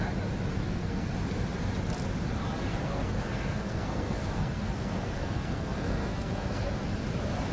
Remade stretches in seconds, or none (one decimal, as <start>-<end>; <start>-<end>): 0.6-1.1; 2.7-6.7